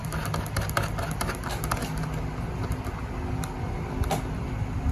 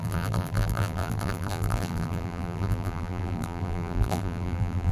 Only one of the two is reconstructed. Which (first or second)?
second